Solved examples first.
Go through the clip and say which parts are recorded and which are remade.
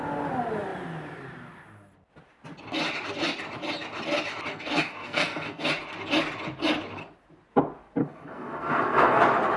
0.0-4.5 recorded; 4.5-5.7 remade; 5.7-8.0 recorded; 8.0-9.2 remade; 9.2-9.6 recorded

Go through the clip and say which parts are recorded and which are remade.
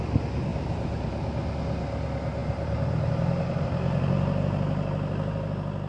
0.0-0.5 recorded; 0.5-1.5 remade; 1.5-2.4 recorded; 2.4-3.1 remade; 3.1-5.9 recorded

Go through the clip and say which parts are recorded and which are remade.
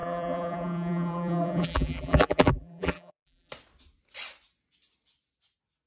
0.0-3.5 remade; 3.5-5.9 recorded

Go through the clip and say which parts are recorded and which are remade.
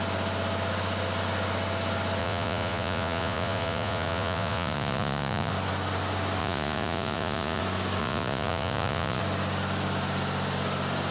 0.0-2.2 recorded; 2.2-5.5 remade; 5.5-6.4 recorded; 6.4-7.6 remade; 7.6-8.0 recorded; 8.0-9.2 remade; 9.2-11.1 recorded